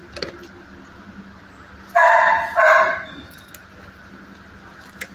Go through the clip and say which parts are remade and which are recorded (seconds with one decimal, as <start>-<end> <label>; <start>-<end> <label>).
0.0-2.9 recorded; 2.9-3.5 remade; 3.5-5.1 recorded